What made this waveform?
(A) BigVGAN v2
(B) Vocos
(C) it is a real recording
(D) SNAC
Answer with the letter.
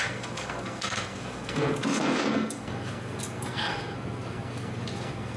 D